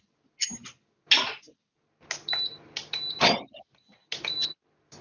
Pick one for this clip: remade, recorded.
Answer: recorded